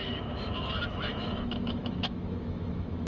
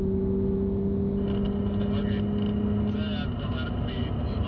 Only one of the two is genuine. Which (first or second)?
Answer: second